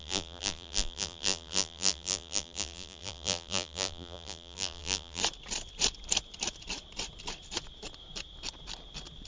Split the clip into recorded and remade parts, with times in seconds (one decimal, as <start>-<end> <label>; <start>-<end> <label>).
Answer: 0.0-5.2 remade; 5.2-9.3 recorded